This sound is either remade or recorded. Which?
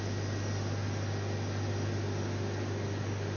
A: recorded